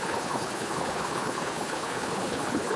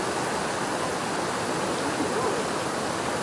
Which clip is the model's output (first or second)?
first